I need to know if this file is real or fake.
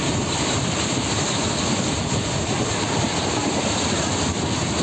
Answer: real